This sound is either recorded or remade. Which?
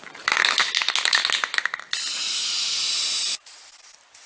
recorded